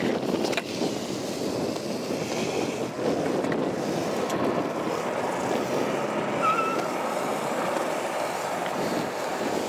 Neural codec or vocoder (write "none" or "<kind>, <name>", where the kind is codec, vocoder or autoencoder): none